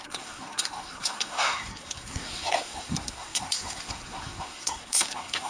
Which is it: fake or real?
fake